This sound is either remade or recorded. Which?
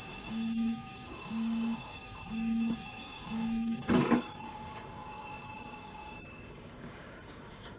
remade